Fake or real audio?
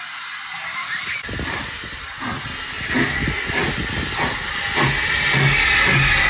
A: real